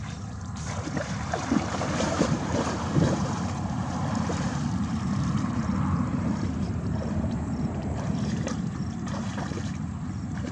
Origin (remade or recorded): remade